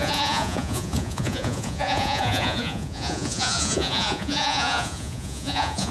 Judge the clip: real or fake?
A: fake